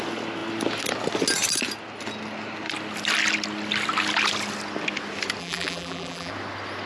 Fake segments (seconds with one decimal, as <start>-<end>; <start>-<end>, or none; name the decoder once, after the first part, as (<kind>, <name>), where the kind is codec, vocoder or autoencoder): 5.4-6.3 (vocoder, BigVGAN v2)